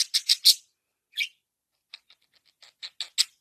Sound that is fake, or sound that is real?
real